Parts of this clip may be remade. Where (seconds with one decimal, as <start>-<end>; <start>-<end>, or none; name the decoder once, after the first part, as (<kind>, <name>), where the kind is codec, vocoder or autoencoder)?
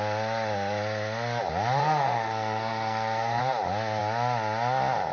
1.8-3.4 (codec, SNAC)